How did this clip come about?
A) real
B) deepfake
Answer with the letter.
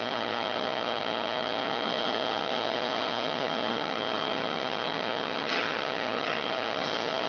B